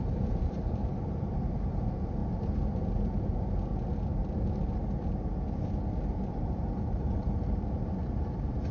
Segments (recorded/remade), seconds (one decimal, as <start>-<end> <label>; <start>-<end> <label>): 0.0-2.2 remade; 2.2-2.8 recorded; 2.8-3.7 remade; 3.7-6.3 recorded; 6.3-8.7 remade